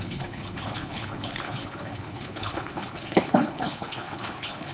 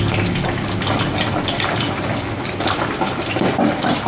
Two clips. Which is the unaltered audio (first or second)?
second